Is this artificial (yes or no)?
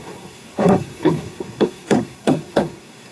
yes